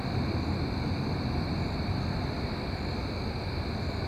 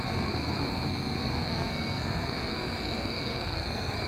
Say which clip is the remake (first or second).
second